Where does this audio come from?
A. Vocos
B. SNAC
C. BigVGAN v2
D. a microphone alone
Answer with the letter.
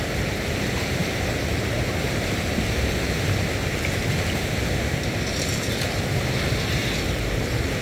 C